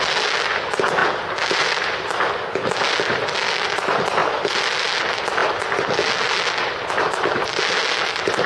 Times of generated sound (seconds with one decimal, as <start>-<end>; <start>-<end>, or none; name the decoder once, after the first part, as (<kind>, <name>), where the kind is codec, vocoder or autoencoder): none